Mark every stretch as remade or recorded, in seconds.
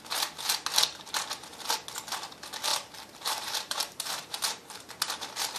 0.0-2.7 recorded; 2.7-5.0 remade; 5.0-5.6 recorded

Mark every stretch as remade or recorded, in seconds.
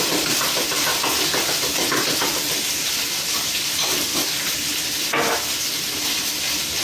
0.0-4.1 recorded; 4.1-5.3 remade; 5.3-6.8 recorded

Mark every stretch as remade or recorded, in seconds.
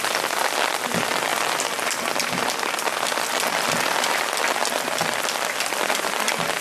0.0-1.3 recorded; 1.3-4.4 remade; 4.4-6.6 recorded